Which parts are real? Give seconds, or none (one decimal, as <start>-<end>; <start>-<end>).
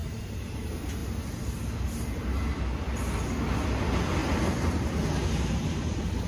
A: 0.5-6.3